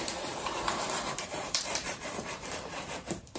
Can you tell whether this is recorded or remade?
remade